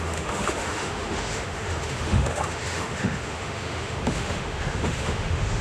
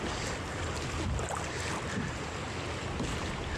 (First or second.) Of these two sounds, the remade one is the first